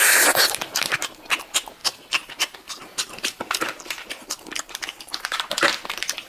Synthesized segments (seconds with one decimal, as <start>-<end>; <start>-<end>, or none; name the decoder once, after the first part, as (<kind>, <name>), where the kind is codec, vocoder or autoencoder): 1.8-5.2 (vocoder, BigVGAN v2)